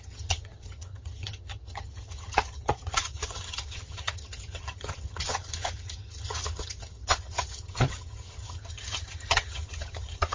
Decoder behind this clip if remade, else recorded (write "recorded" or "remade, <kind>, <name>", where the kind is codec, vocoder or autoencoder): remade, vocoder, HiFi-GAN